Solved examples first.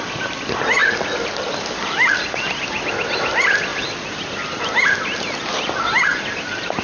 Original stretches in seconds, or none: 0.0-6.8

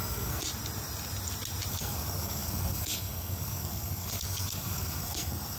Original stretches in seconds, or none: 0.4-1.7

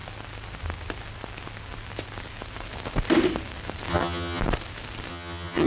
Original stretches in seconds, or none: 0.0-3.9; 4.4-5.1

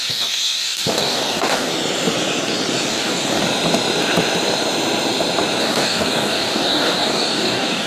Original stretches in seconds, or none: 1.7-2.9; 3.4-5.6

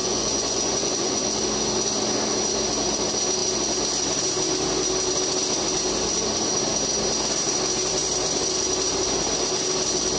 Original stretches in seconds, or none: 1.4-10.2

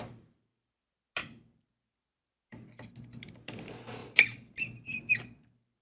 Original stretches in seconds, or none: 0.5-2.9

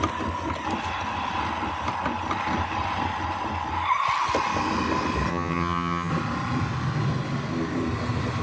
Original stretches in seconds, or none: 0.0-5.3; 6.1-8.4